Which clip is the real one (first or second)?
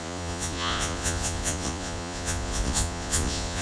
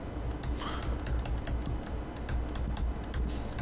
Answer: second